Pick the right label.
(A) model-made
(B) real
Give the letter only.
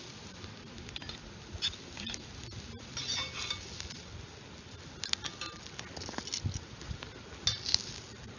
B